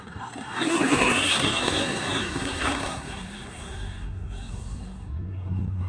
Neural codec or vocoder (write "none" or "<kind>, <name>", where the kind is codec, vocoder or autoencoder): codec, SNAC